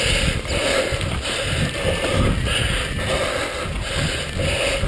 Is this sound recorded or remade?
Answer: recorded